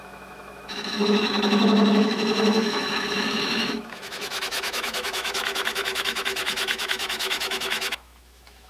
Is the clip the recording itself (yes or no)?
no